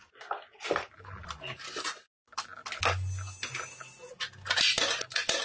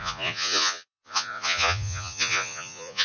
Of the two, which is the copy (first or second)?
second